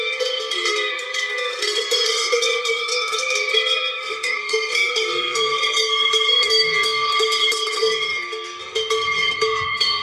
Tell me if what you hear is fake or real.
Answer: fake